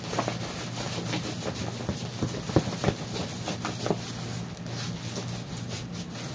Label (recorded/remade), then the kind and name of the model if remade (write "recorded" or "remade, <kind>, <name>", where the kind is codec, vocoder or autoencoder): recorded